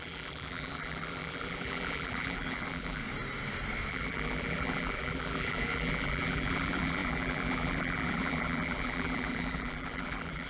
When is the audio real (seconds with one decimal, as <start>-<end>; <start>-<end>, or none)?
3.0-3.9